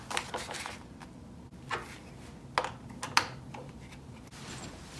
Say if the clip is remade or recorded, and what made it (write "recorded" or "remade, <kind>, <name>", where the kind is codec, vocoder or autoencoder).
recorded